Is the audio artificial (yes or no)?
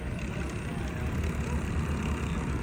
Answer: no